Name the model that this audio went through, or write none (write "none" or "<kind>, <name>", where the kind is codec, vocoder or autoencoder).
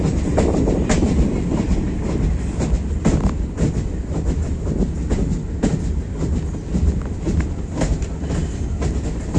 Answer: none